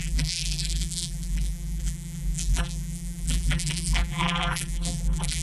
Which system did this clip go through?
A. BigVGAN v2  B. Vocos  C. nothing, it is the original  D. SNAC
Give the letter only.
A